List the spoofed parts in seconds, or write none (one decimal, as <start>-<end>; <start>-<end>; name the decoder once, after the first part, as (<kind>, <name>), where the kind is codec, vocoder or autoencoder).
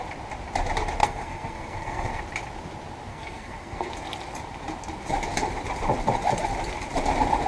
1.0-2.2 (codec, SNAC); 3.1-3.9